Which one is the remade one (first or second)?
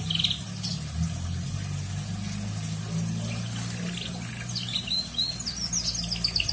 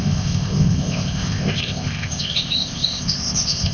second